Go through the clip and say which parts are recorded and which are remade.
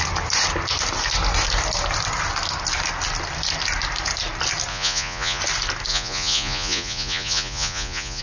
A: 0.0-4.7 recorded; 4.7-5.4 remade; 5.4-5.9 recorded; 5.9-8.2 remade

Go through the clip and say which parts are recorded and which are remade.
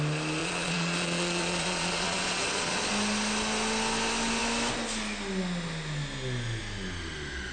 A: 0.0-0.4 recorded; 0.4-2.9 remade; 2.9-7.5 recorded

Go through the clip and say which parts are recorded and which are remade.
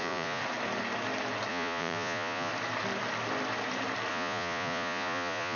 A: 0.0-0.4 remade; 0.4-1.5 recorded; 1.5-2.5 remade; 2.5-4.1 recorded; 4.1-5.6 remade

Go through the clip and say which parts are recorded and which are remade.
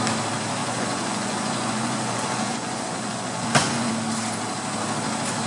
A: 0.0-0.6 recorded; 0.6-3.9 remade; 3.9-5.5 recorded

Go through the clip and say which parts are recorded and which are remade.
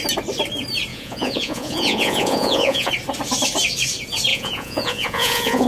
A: 0.0-0.9 recorded; 0.9-2.9 remade; 2.9-4.3 recorded; 4.3-5.7 remade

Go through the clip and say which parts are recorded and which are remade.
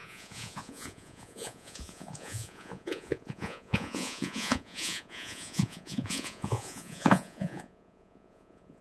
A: 0.0-8.8 remade